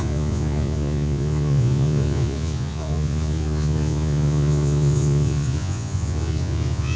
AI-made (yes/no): yes